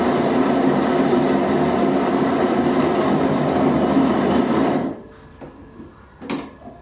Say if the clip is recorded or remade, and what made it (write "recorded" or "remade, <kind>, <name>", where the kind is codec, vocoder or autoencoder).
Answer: recorded